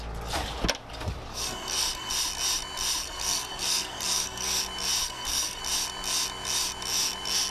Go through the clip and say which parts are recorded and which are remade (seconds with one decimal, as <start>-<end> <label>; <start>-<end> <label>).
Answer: 0.0-1.3 recorded; 1.3-2.1 remade; 2.1-3.0 recorded; 3.0-4.6 remade; 4.6-5.0 recorded; 5.0-5.6 remade; 5.6-7.5 recorded